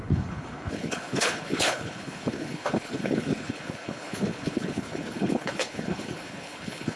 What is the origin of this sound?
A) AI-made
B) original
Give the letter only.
A